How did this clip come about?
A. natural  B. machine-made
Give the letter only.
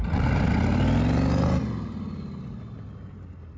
A